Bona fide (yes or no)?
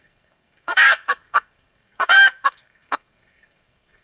no